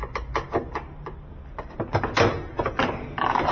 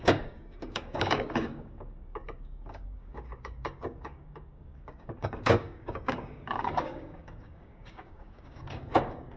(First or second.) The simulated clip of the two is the second